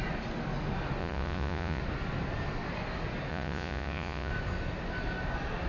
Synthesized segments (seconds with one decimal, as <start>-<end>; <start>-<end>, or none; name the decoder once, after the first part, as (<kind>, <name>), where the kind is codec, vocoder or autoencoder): 1.0-1.8 (vocoder, Vocos); 3.3-4.3